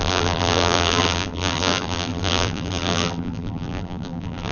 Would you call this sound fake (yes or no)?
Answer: yes